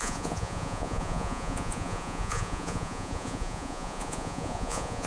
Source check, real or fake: fake